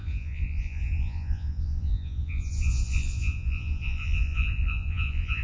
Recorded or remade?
remade